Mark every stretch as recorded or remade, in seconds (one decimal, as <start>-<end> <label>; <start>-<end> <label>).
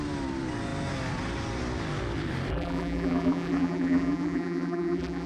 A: 0.0-2.5 recorded; 2.5-5.3 remade